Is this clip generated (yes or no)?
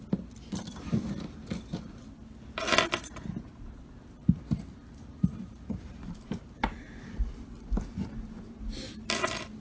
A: no